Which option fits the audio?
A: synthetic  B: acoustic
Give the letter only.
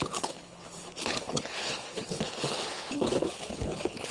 A